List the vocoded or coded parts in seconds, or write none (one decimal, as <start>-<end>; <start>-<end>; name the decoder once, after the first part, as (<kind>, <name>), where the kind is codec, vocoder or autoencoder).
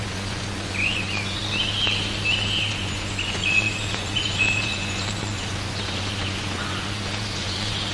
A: 0.0-1.4 (vocoder, Vocos); 2.7-7.9